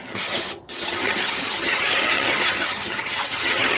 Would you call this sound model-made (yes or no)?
yes